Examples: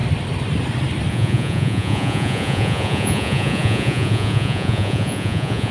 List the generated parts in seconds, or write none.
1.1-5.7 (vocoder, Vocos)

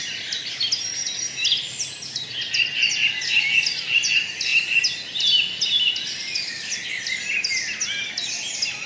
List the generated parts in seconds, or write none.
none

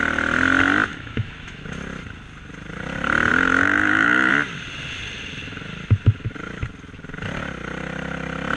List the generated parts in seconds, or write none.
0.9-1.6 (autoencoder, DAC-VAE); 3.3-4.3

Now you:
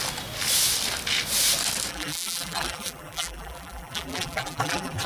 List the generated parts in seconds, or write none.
1.9-5.1 (vocoder, BigVGAN v2)

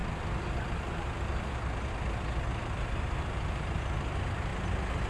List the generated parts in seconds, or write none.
none

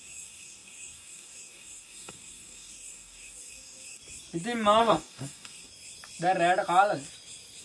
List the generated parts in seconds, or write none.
0.0-4.0 (codec, DAC); 4.8-5.7